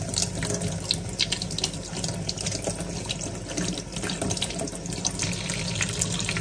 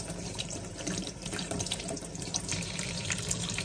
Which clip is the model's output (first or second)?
second